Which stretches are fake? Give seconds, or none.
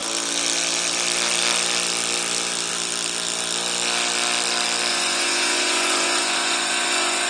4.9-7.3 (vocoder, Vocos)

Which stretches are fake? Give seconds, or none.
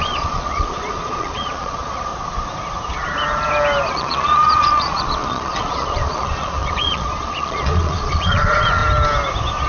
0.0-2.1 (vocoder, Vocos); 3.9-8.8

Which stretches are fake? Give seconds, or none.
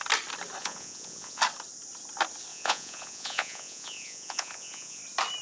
0.6-1.4 (vocoder, Vocos); 2.5-5.0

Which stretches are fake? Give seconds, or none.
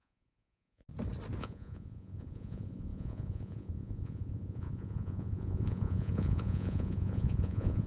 0.0-0.9 (vocoder, Vocos); 1.4-7.9